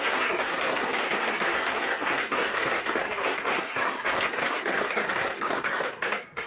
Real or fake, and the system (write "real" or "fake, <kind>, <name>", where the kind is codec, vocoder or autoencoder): fake, codec, SNAC